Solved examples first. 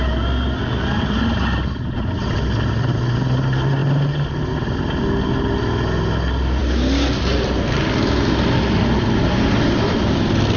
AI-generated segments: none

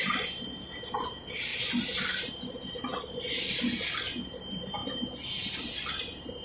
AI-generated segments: none

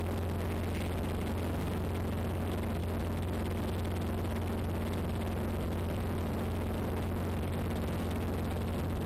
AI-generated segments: none

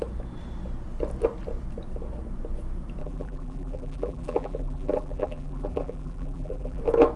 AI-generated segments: 3.0-6.8 (vocoder, BigVGAN v2)